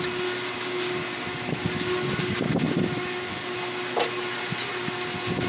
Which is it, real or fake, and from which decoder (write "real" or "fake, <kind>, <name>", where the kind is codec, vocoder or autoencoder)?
real